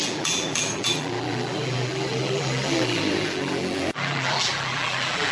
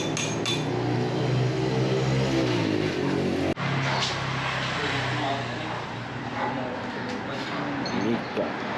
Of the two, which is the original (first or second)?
second